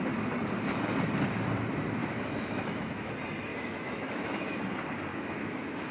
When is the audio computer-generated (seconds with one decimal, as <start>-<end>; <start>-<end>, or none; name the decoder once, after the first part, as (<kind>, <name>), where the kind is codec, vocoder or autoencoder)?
2.0-3.1 (autoencoder, DAC-VAE); 3.5-4.6; 5.1-5.9